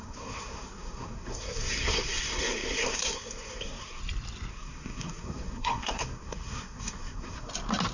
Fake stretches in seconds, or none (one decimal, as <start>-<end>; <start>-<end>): 0.0-4.0; 4.5-7.5